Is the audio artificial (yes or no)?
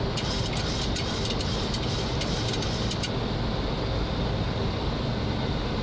no